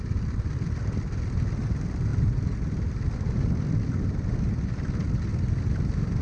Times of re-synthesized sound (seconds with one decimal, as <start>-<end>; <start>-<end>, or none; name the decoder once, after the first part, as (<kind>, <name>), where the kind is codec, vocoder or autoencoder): none